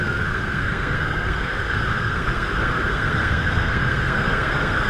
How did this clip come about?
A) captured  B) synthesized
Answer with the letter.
B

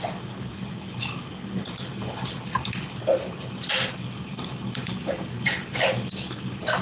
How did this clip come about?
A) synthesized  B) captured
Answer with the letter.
B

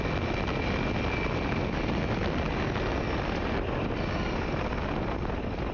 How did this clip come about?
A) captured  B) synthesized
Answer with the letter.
A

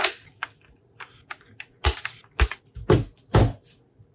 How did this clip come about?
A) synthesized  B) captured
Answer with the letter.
B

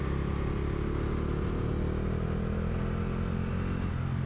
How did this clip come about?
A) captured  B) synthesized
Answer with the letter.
A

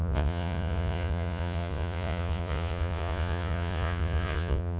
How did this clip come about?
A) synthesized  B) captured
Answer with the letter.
A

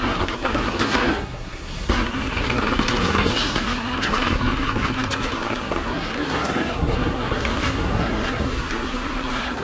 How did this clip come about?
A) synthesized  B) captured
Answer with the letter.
A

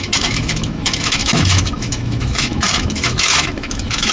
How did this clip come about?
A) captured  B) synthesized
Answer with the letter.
B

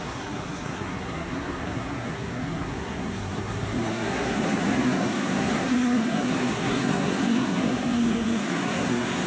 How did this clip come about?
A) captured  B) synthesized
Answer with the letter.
B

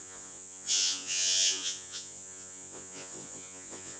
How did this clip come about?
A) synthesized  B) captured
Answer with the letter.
A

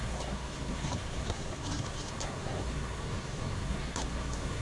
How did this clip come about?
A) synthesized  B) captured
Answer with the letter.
A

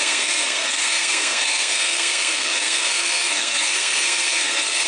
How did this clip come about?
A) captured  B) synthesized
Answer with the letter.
B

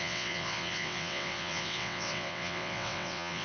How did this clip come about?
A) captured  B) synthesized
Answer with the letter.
B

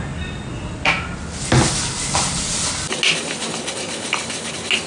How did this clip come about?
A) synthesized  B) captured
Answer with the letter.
B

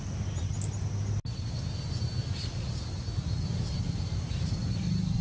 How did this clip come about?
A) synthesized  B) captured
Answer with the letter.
B